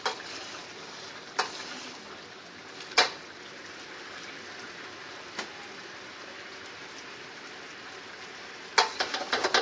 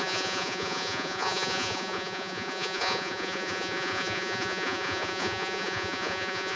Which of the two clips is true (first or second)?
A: first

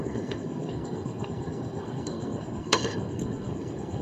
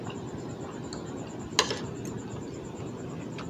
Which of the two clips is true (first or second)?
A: second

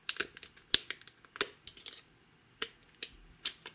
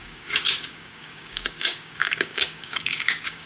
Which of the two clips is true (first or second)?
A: first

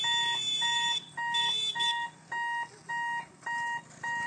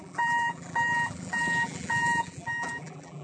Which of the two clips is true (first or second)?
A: first